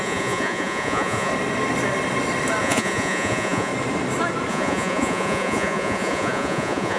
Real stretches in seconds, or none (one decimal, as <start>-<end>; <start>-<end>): 1.3-2.6; 3.7-4.5